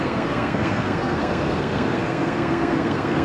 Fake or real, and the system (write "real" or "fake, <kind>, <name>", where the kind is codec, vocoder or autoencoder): fake, codec, SNAC